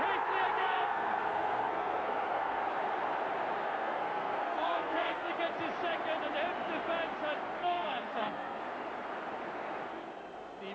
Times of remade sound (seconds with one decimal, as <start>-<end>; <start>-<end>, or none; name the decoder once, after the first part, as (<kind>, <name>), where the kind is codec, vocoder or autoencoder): 0.6-2.6 (codec, SNAC); 3.6-5.3; 7.6-8.6